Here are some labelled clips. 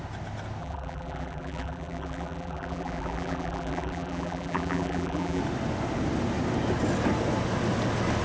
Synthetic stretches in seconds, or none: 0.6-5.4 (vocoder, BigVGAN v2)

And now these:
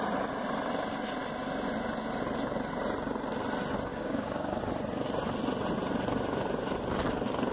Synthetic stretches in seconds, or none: 3.9-4.6 (codec, DAC)